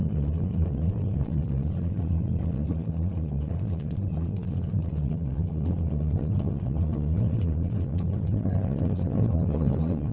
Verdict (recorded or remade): remade